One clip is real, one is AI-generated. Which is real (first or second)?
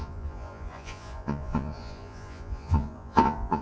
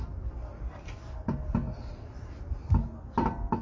second